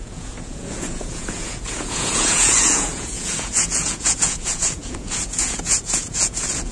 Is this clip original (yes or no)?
no